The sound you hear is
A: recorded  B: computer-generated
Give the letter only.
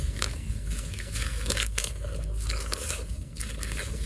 B